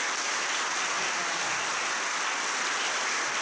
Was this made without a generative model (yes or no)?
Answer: no